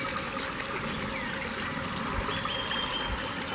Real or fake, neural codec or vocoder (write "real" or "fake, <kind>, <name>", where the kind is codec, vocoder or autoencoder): real